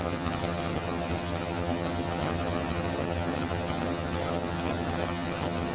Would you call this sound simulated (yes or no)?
yes